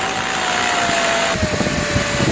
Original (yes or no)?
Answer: yes